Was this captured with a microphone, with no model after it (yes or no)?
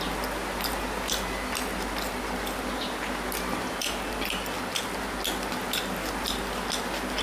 yes